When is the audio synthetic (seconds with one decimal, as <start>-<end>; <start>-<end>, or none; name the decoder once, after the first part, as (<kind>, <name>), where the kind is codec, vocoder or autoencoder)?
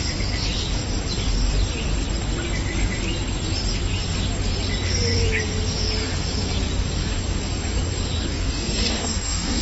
8.3-9.6 (codec, DAC)